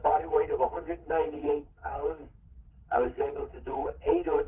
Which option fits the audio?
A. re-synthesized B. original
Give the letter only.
A